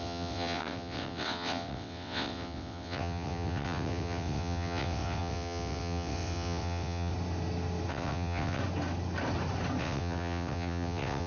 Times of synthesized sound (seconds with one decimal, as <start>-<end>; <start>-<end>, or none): 0.0-7.1; 7.9-8.6; 9.8-11.3